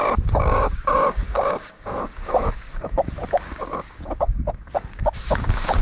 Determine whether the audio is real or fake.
fake